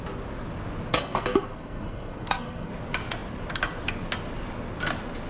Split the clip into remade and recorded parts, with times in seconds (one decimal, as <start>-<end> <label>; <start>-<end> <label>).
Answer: 0.0-0.9 recorded; 0.9-2.7 remade; 2.7-5.3 recorded